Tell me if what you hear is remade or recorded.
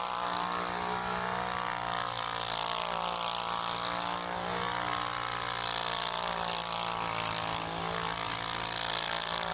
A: recorded